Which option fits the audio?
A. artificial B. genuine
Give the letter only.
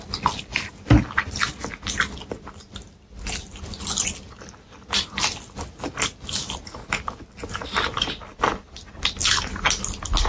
B